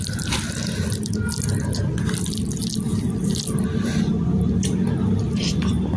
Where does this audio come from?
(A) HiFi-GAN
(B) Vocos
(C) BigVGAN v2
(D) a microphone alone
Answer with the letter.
C